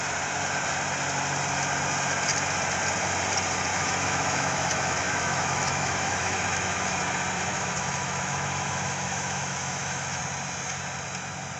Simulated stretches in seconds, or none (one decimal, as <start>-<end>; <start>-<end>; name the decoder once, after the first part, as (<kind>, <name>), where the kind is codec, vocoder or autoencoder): 3.7-7.0 (autoencoder, DAC-VAE); 7.5-10.2